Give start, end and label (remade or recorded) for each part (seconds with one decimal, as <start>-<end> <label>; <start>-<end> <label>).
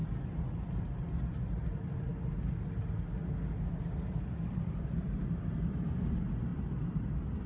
0.0-6.5 recorded; 6.5-7.5 remade